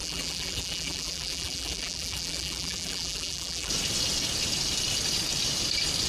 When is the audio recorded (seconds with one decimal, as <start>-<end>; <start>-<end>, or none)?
3.7-6.1